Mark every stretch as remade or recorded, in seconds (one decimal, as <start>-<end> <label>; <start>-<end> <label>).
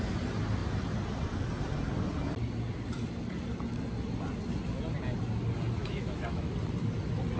0.0-5.8 recorded; 5.8-6.5 remade; 6.5-7.4 recorded